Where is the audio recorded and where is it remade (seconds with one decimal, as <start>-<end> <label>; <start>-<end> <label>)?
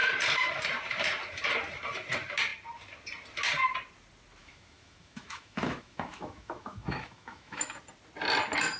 0.0-4.4 recorded; 4.4-7.8 remade; 7.8-8.8 recorded